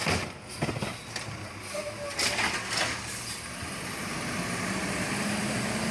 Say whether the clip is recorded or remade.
recorded